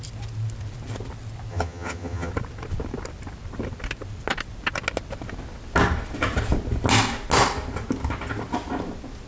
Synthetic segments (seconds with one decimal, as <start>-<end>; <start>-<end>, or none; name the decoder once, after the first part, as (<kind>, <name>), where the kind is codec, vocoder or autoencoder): 1.5-2.3 (vocoder, HiFi-GAN)